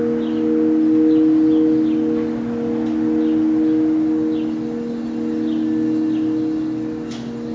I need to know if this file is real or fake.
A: real